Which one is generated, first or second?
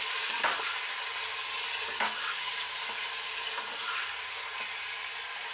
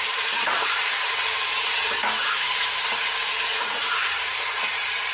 second